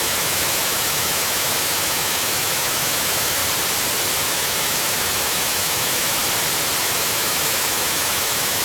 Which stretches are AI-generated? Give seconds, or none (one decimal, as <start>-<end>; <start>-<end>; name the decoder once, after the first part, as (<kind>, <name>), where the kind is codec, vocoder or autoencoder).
0.0-3.4 (autoencoder, DAC-VAE); 4.2-6.2; 6.8-8.6